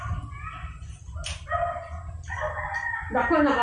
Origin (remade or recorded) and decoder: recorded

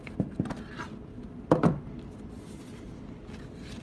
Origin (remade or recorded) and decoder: recorded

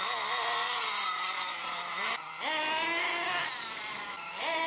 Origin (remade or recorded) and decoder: recorded